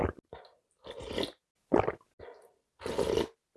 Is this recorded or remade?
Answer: recorded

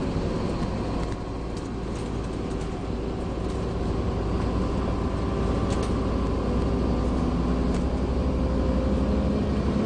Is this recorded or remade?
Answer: recorded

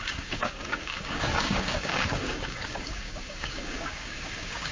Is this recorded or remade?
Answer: remade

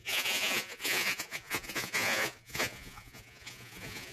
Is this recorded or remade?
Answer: remade